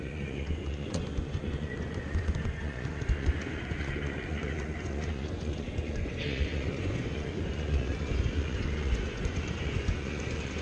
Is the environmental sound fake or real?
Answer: fake